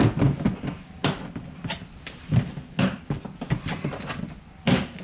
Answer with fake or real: real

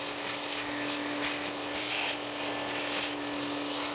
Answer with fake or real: real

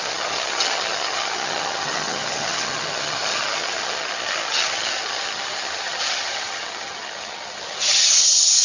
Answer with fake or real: fake